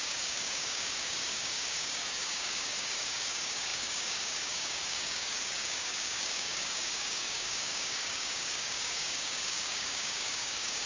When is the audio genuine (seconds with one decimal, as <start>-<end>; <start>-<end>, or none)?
none